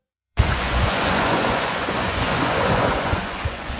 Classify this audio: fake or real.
fake